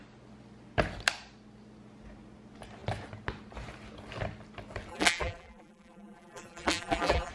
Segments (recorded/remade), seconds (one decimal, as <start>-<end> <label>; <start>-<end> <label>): 0.0-4.9 recorded; 4.9-7.3 remade